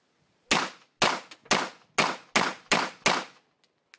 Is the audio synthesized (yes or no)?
no